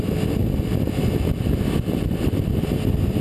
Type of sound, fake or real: real